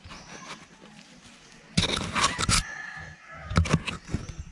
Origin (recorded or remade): recorded